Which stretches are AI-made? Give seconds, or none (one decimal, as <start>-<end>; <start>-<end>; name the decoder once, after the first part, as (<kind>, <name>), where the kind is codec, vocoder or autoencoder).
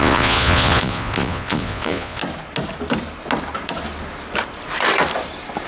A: 0.0-2.2 (vocoder, Vocos)